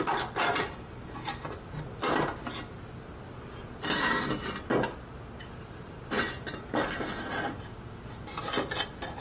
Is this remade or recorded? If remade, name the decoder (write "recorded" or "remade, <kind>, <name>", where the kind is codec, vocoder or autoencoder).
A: recorded